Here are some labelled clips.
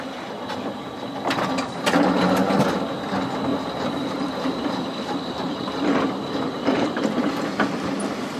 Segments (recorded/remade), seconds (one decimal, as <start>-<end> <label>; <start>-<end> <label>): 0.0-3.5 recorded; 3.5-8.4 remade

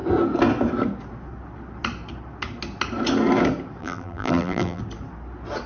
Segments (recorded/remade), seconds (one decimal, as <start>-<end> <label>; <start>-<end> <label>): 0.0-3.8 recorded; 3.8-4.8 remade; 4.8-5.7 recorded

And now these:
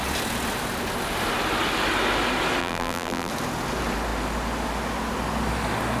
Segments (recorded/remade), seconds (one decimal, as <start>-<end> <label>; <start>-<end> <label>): 0.0-2.6 recorded; 2.6-3.3 remade; 3.3-6.0 recorded

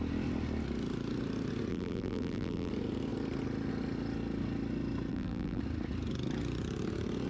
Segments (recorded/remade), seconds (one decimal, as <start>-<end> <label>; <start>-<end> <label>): 0.0-1.7 recorded; 1.7-2.7 remade; 2.7-5.1 recorded; 5.1-5.6 remade; 5.6-7.3 recorded